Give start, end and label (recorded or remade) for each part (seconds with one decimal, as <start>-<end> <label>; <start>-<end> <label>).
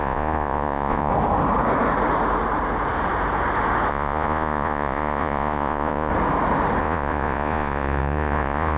0.0-1.1 remade; 1.1-3.9 recorded; 3.9-6.1 remade; 6.1-6.8 recorded; 6.8-8.8 remade